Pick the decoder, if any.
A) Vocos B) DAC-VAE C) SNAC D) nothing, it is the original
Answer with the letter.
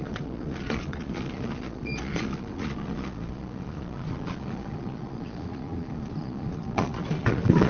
A